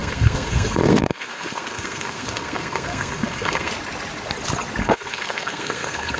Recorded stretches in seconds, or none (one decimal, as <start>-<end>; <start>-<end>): 3.7-4.8